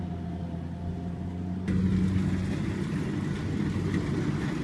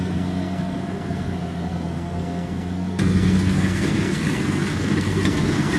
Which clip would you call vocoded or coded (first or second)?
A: second